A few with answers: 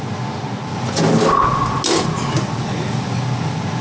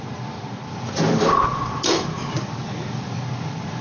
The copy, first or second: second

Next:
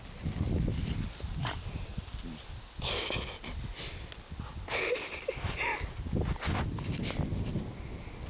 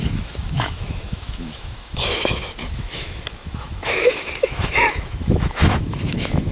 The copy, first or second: second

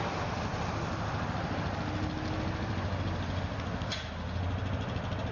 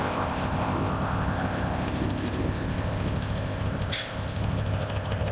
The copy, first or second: second